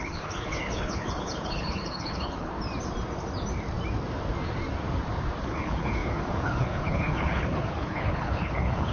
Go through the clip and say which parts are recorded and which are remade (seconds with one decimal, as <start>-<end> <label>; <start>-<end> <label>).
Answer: 0.0-2.5 remade; 2.5-5.4 recorded; 5.4-8.9 remade